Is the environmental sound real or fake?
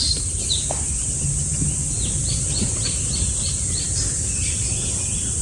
real